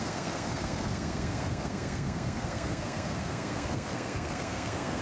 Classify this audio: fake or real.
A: fake